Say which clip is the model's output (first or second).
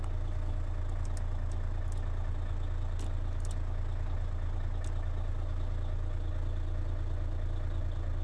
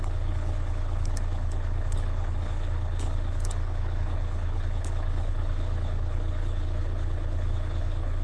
second